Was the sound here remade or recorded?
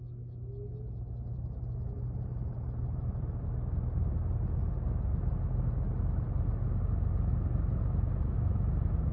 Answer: recorded